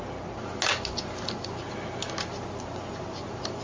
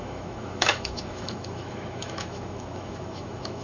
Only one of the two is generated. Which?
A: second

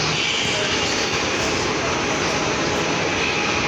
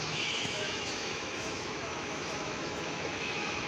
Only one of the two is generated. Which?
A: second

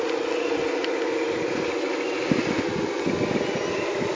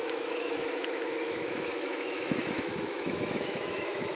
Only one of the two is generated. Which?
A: second